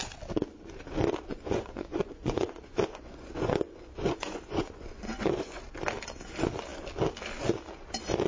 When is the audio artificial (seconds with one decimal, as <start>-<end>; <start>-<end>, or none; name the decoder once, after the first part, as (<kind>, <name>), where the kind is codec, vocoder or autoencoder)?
1.3-5.6 (vocoder, Vocos)